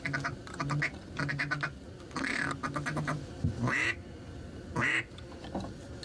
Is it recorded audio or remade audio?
recorded